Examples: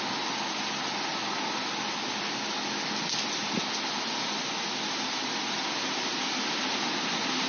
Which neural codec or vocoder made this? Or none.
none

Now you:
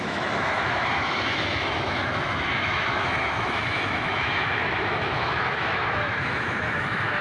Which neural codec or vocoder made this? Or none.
autoencoder, DAC-VAE